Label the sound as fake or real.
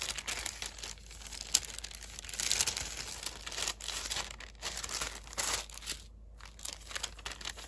real